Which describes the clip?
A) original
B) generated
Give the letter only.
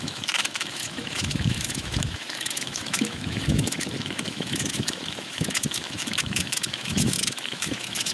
B